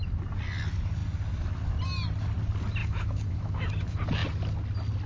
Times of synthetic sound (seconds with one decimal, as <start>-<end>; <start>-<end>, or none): 2.8-3.7